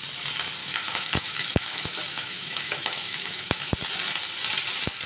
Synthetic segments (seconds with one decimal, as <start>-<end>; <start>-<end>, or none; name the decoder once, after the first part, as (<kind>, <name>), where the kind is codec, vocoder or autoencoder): 0.6-3.7 (autoencoder, DAC-VAE)